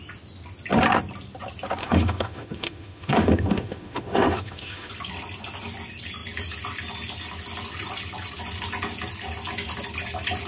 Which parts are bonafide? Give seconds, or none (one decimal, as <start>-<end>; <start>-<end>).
0.0-1.8; 4.9-10.5